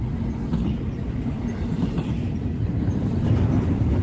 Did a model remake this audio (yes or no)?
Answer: yes